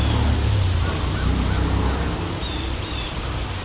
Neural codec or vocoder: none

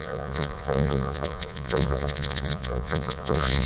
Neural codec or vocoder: vocoder, Vocos